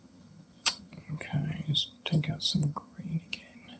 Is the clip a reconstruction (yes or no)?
yes